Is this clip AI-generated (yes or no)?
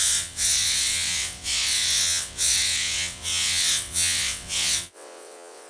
yes